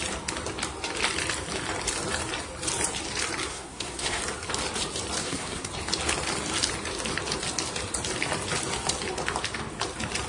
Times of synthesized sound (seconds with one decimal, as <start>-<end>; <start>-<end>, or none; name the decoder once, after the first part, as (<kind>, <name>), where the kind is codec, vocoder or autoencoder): 3.5-4.2 (codec, SNAC); 5.2-5.7